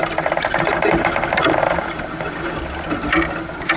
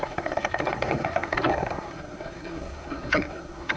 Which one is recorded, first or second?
first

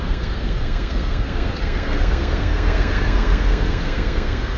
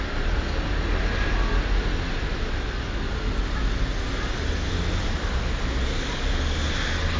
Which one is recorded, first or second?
second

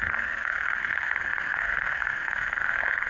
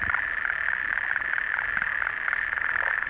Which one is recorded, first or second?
second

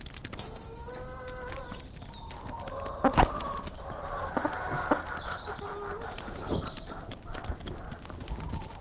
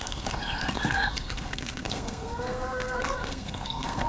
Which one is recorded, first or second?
first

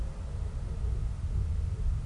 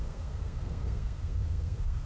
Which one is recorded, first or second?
first